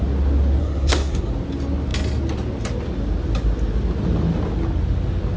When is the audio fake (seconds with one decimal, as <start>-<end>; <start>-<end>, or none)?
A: 0.6-1.3